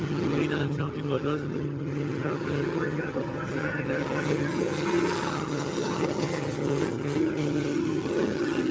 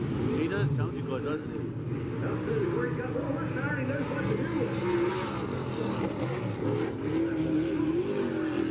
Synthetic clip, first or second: first